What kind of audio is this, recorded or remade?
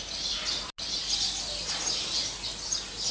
recorded